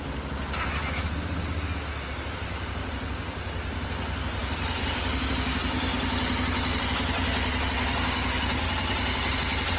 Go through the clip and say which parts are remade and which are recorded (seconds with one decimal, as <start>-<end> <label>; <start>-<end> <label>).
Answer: 0.0-4.4 recorded; 4.4-5.3 remade; 5.3-9.8 recorded

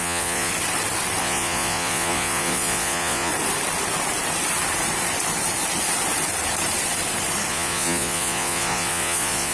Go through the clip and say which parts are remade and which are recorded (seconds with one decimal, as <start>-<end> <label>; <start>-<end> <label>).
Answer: 0.0-0.5 remade; 0.5-1.2 recorded; 1.2-3.3 remade; 3.3-7.5 recorded; 7.5-9.5 remade

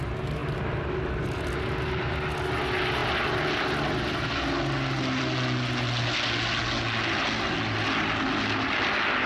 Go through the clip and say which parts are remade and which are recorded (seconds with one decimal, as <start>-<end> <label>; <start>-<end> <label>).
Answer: 0.0-9.3 recorded

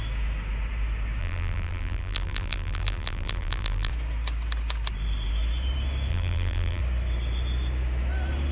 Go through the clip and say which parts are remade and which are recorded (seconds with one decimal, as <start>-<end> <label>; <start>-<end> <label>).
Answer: 0.0-1.2 recorded; 1.2-3.9 remade; 3.9-6.1 recorded; 6.1-6.8 remade; 6.8-8.5 recorded